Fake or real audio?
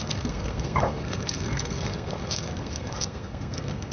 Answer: fake